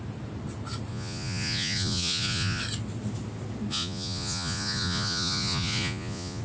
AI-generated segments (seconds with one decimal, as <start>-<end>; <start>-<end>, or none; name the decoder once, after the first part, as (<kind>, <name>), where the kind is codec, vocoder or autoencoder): 0.9-2.6 (vocoder, Vocos); 3.7-6.4